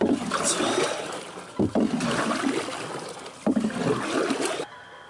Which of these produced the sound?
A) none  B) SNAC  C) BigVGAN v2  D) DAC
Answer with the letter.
A